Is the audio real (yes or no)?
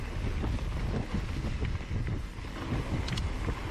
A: yes